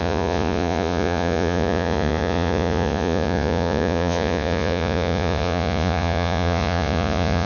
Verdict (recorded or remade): remade